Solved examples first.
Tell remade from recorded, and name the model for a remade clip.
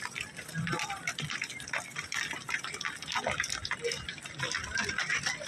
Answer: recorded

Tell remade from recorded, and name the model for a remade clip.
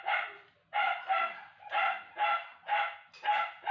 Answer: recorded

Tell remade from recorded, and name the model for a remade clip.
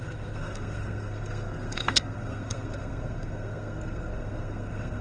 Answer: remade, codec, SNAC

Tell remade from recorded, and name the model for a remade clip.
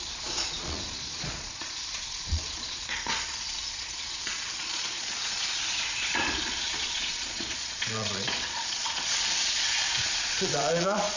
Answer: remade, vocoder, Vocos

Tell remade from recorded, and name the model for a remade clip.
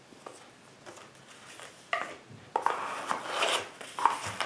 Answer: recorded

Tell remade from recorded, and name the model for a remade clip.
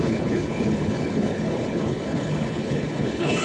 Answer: remade, codec, HILCodec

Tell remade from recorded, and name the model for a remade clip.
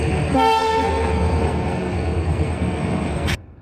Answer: remade, codec, SNAC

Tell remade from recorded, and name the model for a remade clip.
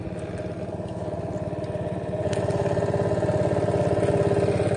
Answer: recorded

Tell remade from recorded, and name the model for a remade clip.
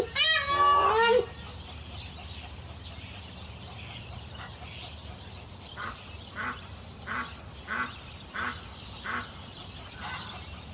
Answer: recorded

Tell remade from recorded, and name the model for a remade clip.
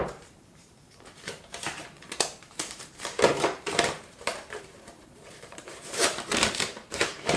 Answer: remade, vocoder, BigVGAN v2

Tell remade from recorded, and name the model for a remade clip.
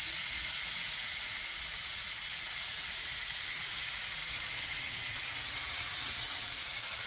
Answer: remade, vocoder, Vocos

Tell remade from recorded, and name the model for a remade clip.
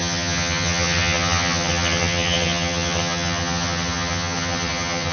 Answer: remade, vocoder, HiFi-GAN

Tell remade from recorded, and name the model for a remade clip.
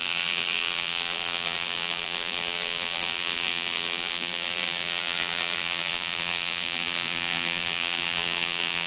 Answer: remade, vocoder, BigVGAN v2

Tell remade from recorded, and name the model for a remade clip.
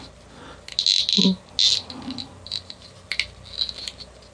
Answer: recorded